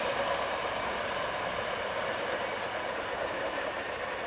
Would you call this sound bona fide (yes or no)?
yes